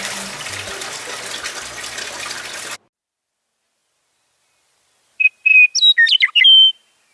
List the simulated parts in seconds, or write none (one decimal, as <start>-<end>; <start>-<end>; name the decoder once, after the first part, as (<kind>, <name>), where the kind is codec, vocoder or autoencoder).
none